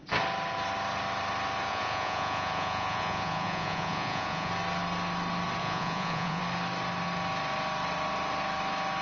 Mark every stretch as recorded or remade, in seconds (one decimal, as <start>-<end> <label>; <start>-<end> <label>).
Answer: 0.0-1.7 recorded; 1.7-4.5 remade; 4.5-5.6 recorded; 5.6-6.4 remade; 6.4-9.0 recorded